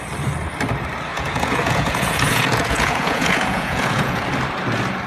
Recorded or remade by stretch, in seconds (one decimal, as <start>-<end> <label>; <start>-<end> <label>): 0.0-1.1 recorded; 1.1-4.2 remade; 4.2-5.1 recorded